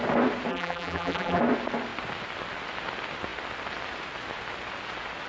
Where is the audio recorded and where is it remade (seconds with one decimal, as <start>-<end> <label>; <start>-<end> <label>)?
0.0-0.5 recorded; 0.5-1.4 remade; 1.4-5.3 recorded

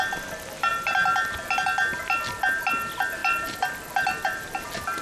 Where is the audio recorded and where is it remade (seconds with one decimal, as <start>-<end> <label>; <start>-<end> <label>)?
0.0-3.2 recorded; 3.2-5.0 remade

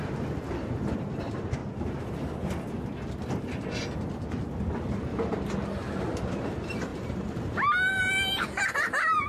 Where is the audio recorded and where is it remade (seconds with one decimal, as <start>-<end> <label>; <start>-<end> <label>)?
0.0-1.6 remade; 1.6-6.4 recorded; 6.4-9.3 remade

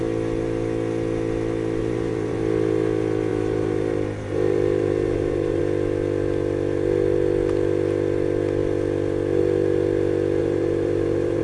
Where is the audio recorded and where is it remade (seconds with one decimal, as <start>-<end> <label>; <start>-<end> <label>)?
0.0-1.8 recorded; 1.8-2.4 remade; 2.4-3.3 recorded; 3.3-5.6 remade; 5.6-10.4 recorded; 10.4-11.4 remade

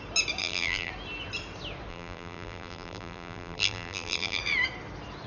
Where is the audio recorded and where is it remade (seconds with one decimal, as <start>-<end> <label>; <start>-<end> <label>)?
0.0-0.4 recorded; 0.4-0.9 remade; 0.9-1.9 recorded; 1.9-4.4 remade; 4.4-5.3 recorded

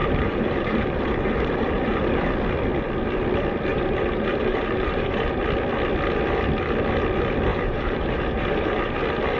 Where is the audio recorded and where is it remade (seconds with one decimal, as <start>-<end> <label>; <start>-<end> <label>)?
0.0-2.3 remade; 2.3-3.7 recorded; 3.7-5.4 remade; 5.4-7.5 recorded; 7.5-9.0 remade; 9.0-9.4 recorded